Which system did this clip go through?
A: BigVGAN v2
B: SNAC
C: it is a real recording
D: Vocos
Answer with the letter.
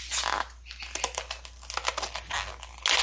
C